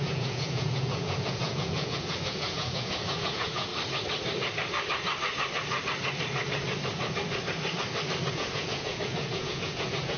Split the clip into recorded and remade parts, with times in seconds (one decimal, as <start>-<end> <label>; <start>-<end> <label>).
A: 0.0-3.7 remade; 3.7-8.3 recorded; 8.3-10.2 remade